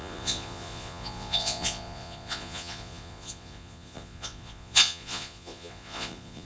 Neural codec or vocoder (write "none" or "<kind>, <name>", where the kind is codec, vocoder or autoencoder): vocoder, Vocos